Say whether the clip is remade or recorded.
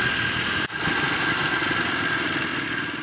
recorded